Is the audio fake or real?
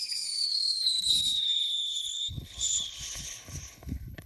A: fake